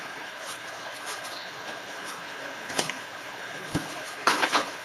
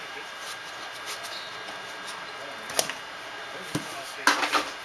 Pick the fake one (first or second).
first